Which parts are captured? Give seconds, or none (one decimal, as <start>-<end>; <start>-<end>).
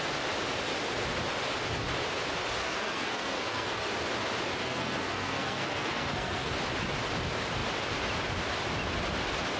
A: 0.0-2.6; 3.9-4.6; 6.5-9.6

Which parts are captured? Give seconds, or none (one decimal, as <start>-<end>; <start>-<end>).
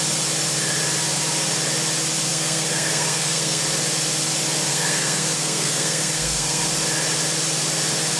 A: 0.0-2.3; 3.6-4.7; 6.6-8.2